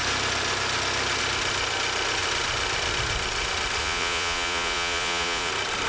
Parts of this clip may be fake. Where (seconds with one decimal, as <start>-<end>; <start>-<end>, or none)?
3.8-5.5